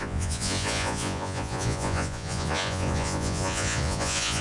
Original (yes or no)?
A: no